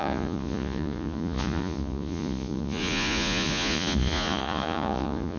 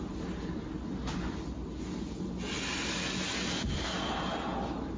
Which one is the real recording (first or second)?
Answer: second